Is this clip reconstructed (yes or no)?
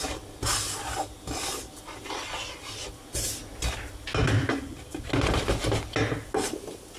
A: no